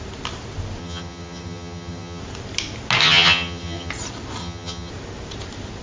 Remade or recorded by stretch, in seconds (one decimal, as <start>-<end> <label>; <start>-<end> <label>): 0.0-0.8 recorded; 0.8-2.2 remade; 2.2-3.0 recorded; 3.0-3.9 remade; 3.9-4.4 recorded; 4.4-4.9 remade; 4.9-5.8 recorded